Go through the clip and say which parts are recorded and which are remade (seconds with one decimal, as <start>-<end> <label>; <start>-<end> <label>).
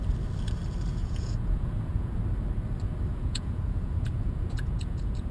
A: 0.0-1.0 recorded; 1.0-2.2 remade; 2.2-3.1 recorded; 3.1-5.3 remade